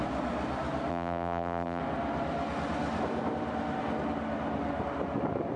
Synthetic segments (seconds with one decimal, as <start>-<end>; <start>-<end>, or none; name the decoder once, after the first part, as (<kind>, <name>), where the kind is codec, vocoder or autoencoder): 0.9-1.8 (vocoder, BigVGAN v2)